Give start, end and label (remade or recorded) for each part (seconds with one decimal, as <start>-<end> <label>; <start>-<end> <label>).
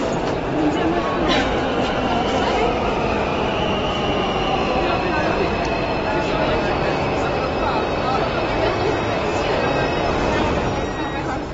0.0-11.5 recorded